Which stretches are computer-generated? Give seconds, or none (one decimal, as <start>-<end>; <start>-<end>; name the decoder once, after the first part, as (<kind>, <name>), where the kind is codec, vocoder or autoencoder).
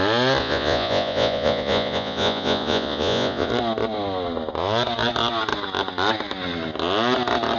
0.4-3.5 (vocoder, Vocos)